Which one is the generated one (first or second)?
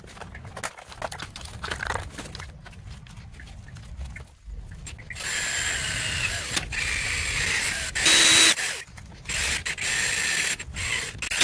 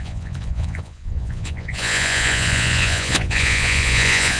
second